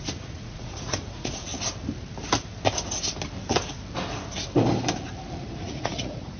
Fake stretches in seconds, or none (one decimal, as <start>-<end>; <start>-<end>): 0.0-1.5; 5.3-6.4